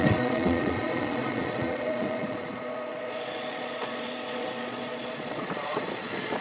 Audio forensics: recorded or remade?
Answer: remade